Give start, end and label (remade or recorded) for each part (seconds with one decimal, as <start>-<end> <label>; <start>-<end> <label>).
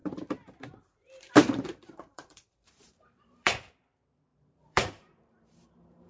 0.0-3.7 remade; 3.7-4.3 recorded; 4.3-6.1 remade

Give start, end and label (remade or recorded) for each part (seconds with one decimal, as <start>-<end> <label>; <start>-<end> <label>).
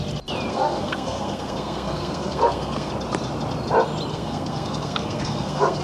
0.0-0.5 recorded; 0.5-2.9 remade; 2.9-4.1 recorded; 4.1-5.8 remade